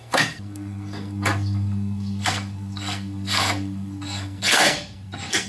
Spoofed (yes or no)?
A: yes